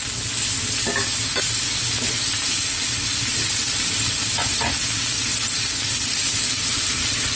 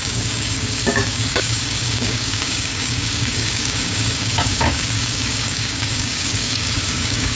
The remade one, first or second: second